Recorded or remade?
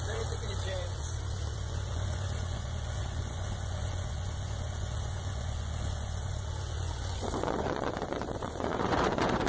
remade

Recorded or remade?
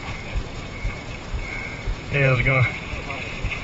remade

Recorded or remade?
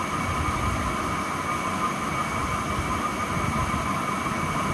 recorded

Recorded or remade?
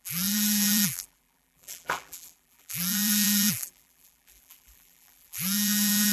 remade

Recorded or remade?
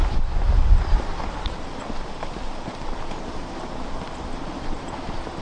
recorded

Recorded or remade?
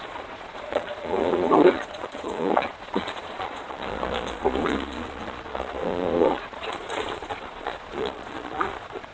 remade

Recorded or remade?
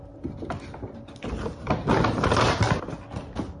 recorded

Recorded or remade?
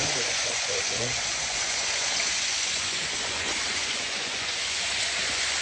remade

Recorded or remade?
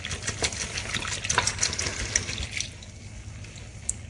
recorded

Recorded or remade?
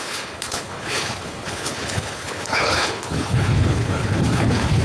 remade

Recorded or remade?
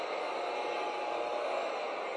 recorded